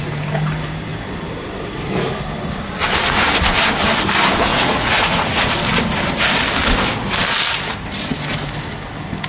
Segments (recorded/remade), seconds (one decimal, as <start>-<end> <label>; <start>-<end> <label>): 0.0-4.5 recorded; 4.5-5.6 remade; 5.6-9.3 recorded